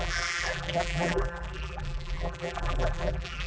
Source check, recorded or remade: remade